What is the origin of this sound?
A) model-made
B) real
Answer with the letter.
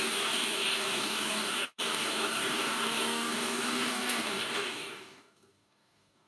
A